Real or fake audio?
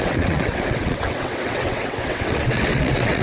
fake